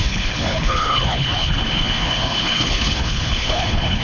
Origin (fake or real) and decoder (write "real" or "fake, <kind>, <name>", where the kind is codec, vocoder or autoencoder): fake, codec, HILCodec